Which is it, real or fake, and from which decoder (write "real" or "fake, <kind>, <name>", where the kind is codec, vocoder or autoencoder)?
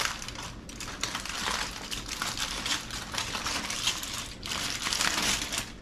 real